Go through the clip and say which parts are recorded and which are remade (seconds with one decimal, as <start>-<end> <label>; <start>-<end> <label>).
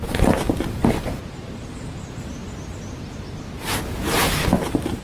0.0-2.4 remade; 2.4-3.1 recorded; 3.1-5.0 remade